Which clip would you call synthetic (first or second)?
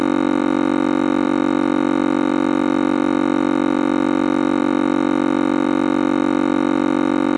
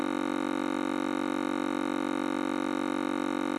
first